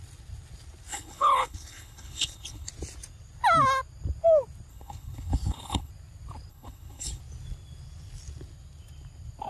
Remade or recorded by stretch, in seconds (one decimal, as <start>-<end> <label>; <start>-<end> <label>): 0.0-0.9 recorded; 0.9-2.7 remade; 2.7-4.7 recorded; 4.7-5.9 remade; 5.9-6.5 recorded; 6.5-7.2 remade; 7.2-9.5 recorded